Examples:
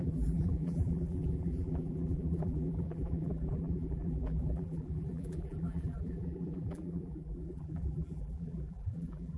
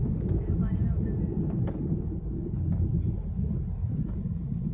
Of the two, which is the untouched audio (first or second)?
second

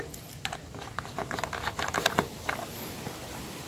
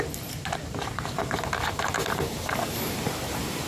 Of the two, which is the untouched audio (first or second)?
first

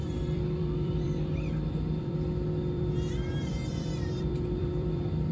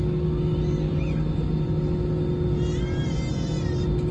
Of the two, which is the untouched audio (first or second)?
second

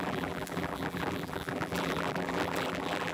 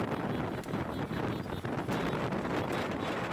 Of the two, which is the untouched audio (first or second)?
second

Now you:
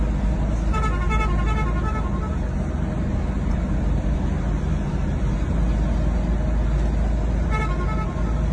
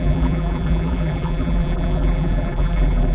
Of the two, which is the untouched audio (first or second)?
first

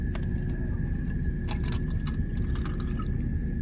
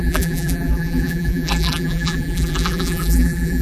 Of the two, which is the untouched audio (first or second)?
first